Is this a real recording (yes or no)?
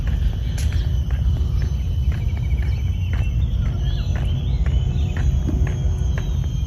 yes